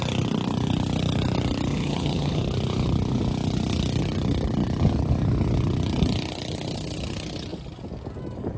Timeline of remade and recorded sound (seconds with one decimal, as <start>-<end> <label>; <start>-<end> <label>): 0.0-1.7 recorded; 1.7-2.4 remade; 2.4-8.6 recorded